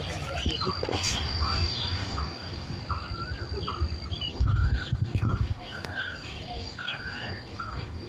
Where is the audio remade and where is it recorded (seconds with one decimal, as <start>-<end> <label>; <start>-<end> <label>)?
0.0-0.9 recorded; 0.9-2.8 remade; 2.8-4.3 recorded; 4.3-8.1 remade